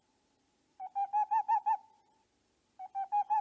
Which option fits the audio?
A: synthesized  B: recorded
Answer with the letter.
B